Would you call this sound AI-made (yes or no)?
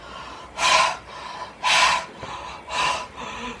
yes